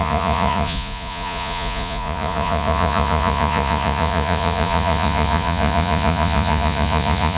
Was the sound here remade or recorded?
remade